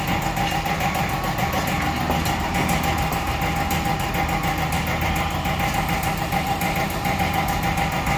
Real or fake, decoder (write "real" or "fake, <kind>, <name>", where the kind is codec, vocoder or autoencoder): real